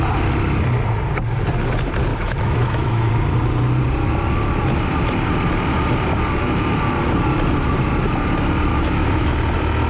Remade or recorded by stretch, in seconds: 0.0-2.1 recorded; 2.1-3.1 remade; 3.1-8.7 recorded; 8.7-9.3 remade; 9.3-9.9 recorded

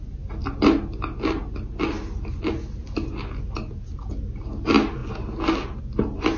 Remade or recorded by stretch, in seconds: 0.0-6.4 recorded

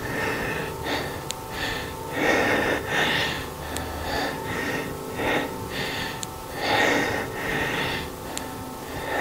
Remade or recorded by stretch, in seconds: 0.0-9.2 recorded

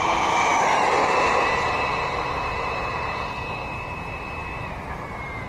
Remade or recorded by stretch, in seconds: 0.0-5.5 recorded

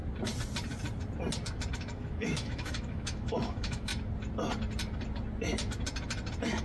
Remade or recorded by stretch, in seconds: 0.0-1.7 recorded; 1.7-3.9 remade; 3.9-6.6 recorded

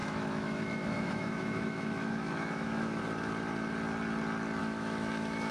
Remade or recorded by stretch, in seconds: 0.0-3.0 remade; 3.0-4.6 recorded; 4.6-5.5 remade

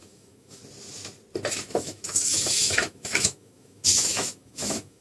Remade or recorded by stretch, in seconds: 0.0-0.6 remade; 0.6-1.6 recorded; 1.6-5.0 remade